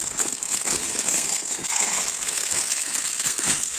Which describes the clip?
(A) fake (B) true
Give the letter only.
A